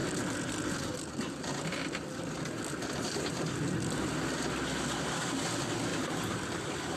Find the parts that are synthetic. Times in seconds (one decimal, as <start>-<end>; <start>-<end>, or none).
0.0-4.2; 5.9-7.0